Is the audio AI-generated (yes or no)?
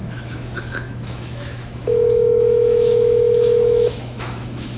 yes